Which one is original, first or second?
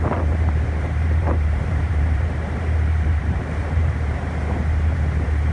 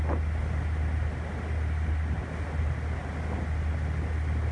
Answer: second